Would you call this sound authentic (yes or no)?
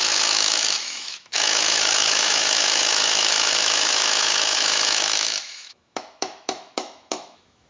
no